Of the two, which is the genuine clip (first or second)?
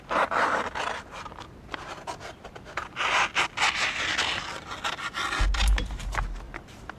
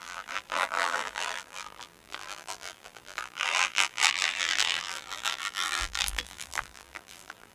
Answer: first